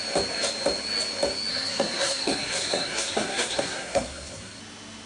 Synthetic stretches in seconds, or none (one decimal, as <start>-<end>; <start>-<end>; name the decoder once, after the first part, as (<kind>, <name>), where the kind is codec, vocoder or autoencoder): 1.5-4.6 (codec, SNAC)